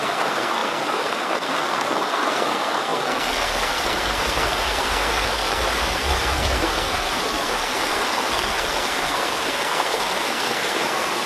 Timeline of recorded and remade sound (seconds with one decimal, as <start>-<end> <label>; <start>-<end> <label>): 0.0-11.3 remade